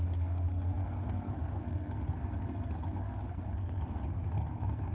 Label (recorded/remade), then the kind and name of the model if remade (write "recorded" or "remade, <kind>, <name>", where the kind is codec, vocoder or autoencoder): remade, codec, SNAC